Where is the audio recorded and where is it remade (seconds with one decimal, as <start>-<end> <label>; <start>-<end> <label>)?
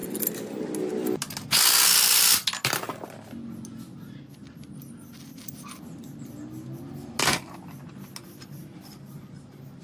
0.0-9.8 recorded